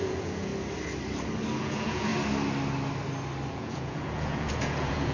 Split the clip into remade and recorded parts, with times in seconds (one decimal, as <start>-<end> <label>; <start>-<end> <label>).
0.0-0.5 remade; 0.5-1.6 recorded; 1.6-2.1 remade; 2.1-3.5 recorded; 3.5-5.1 remade